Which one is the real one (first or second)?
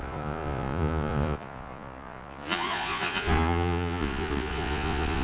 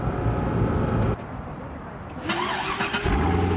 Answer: second